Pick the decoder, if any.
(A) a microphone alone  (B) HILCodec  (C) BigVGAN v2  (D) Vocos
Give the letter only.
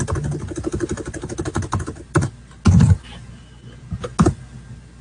A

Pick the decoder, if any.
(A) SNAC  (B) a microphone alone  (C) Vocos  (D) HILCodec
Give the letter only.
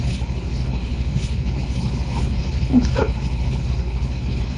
D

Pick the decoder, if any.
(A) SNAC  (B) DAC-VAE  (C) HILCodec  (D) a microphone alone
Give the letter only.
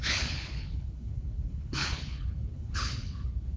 C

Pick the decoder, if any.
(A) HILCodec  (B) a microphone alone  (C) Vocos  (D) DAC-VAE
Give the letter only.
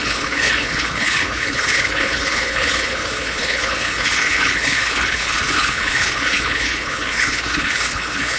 A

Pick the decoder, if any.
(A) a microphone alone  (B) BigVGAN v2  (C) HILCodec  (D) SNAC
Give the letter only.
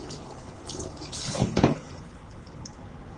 C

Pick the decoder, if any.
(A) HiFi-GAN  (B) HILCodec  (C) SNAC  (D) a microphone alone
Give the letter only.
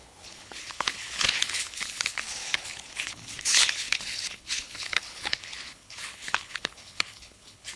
B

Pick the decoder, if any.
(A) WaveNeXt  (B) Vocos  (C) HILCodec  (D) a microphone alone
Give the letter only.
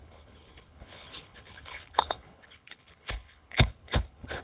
C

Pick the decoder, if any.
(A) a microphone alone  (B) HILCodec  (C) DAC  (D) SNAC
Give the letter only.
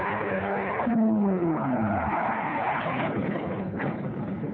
B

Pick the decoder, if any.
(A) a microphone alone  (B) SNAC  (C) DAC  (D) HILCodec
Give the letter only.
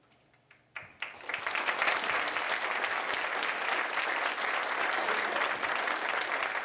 A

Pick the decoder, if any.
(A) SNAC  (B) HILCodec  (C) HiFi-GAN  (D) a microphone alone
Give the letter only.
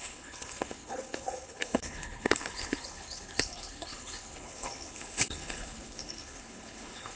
B